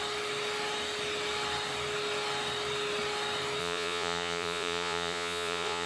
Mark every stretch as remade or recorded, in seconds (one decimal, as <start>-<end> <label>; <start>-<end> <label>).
0.0-3.6 recorded; 3.6-5.9 remade